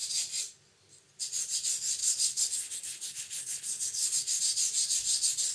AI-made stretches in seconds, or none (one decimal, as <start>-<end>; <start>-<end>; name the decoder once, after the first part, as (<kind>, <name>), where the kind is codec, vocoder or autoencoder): 2.0-4.4 (codec, HILCodec)